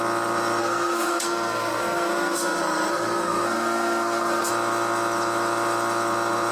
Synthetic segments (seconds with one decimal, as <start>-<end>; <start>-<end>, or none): 0.6-4.5